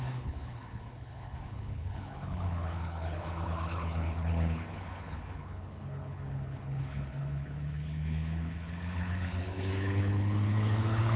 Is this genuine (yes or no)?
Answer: no